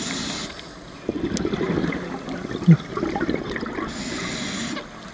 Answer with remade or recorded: recorded